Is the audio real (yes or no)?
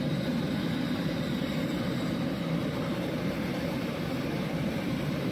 no